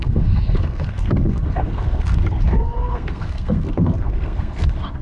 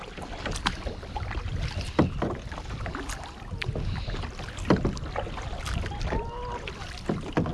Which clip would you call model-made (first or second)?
first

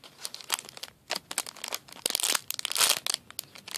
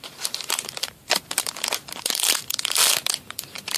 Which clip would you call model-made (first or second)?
second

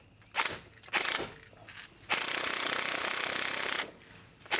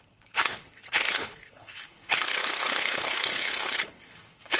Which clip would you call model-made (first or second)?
second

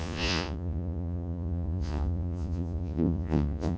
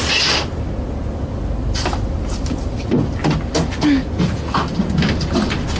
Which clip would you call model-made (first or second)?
first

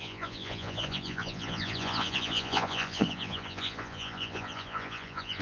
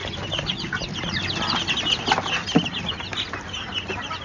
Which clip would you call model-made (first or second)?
first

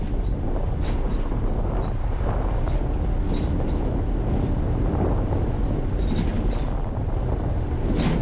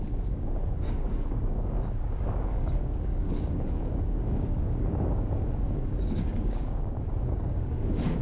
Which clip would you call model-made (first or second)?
second